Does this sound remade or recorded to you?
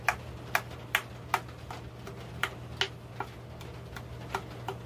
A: recorded